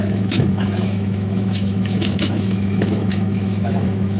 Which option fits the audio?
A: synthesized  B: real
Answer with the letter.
A